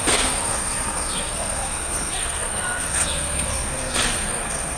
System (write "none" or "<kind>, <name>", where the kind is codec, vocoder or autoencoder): codec, SNAC